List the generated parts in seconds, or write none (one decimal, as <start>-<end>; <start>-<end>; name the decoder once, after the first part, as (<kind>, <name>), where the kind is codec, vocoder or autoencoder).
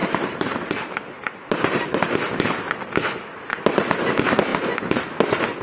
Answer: 0.0-2.0 (vocoder, BigVGAN v2); 4.5-5.0